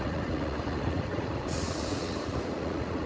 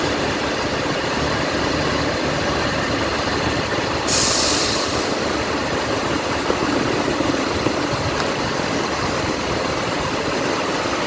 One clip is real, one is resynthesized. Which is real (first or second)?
second